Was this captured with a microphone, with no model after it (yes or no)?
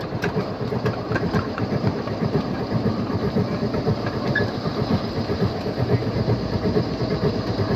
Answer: yes